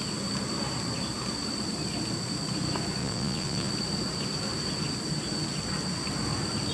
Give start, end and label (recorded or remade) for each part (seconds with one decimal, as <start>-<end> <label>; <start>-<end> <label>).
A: 0.0-3.0 recorded; 3.0-3.7 remade; 3.7-6.7 recorded

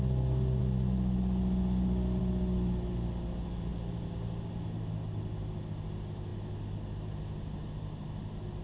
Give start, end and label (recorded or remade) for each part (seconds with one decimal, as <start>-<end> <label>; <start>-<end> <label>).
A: 0.0-8.6 recorded

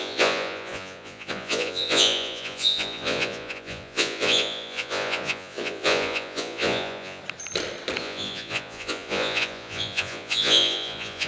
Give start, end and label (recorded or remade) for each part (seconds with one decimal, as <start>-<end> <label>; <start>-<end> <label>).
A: 0.0-7.2 remade; 7.2-8.0 recorded; 8.0-11.3 remade

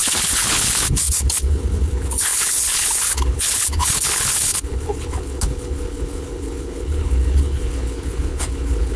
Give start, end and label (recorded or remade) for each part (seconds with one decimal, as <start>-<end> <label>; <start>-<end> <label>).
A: 0.0-9.0 remade

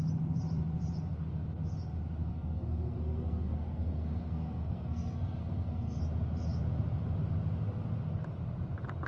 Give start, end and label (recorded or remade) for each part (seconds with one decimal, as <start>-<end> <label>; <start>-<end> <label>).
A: 0.0-2.3 recorded; 2.3-6.0 remade; 6.0-9.1 recorded

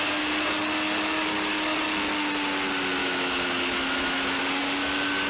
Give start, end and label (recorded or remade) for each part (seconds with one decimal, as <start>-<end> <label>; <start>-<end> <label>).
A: 0.0-3.0 recorded; 3.0-4.4 remade; 4.4-5.3 recorded